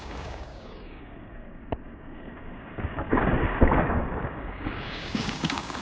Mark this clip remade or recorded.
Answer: remade